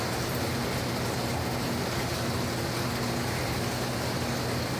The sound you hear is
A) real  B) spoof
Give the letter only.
A